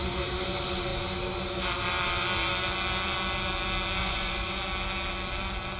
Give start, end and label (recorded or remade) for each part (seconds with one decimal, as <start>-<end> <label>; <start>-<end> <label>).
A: 0.0-4.0 recorded; 4.0-4.6 remade; 4.6-5.8 recorded